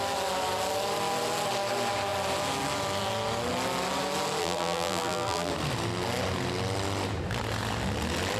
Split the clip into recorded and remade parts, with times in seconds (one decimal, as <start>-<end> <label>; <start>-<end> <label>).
0.0-4.4 recorded; 4.4-5.5 remade; 5.5-8.4 recorded